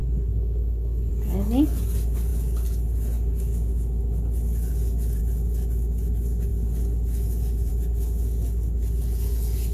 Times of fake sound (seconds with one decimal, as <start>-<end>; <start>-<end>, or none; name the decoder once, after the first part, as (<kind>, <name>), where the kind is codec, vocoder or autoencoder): 0.0-1.1 (codec, SNAC)